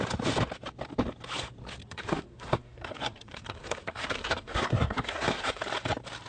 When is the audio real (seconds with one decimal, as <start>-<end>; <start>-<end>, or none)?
0.0-1.8; 5.6-6.3